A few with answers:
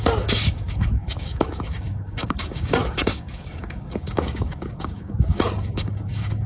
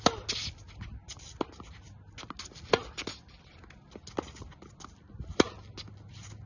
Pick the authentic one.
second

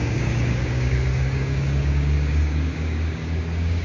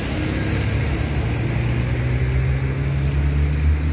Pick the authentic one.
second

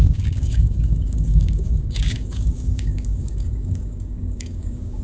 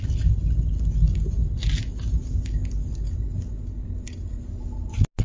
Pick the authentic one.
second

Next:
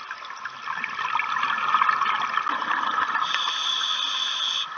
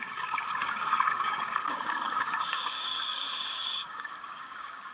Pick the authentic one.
first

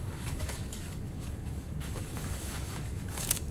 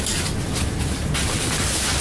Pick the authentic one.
second